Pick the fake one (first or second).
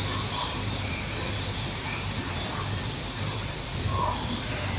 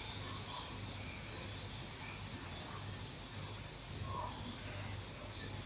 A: first